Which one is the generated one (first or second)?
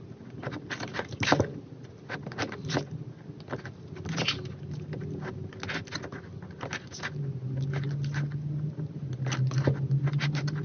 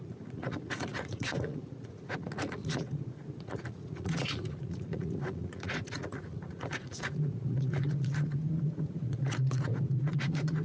second